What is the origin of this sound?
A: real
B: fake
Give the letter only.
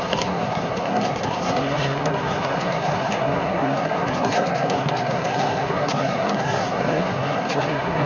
B